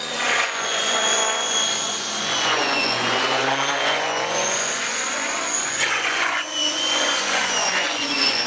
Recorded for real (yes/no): no